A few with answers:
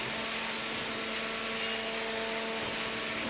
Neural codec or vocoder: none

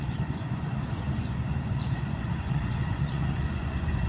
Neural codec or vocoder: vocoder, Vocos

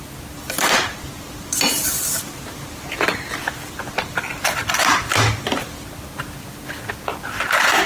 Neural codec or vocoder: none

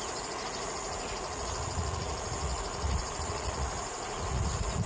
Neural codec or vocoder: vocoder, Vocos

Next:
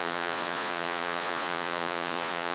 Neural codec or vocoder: vocoder, Vocos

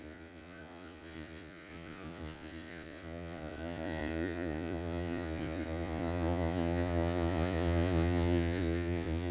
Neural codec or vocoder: vocoder, Vocos